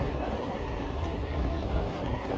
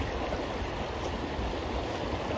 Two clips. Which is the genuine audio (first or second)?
second